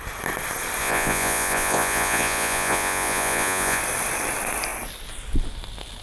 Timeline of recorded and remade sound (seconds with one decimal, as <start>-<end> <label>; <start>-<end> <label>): 0.0-0.8 recorded; 0.8-3.8 remade; 3.8-6.0 recorded